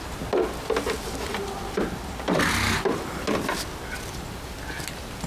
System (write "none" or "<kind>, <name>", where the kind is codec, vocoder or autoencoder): none